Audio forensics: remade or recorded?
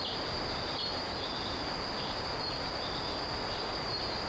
recorded